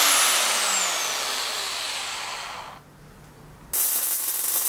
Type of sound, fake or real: real